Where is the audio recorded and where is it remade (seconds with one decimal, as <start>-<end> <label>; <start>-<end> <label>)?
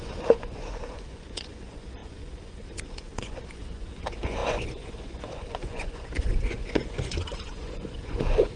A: 0.0-8.6 remade